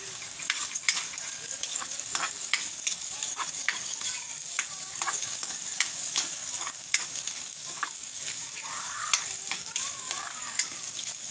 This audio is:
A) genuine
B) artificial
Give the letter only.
B